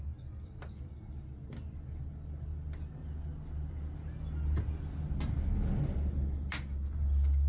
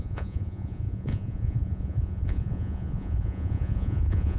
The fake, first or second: second